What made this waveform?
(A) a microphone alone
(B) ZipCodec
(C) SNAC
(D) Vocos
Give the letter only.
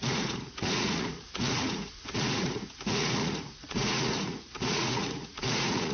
D